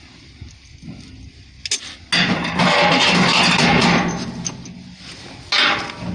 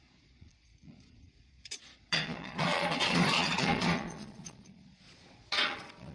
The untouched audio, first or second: first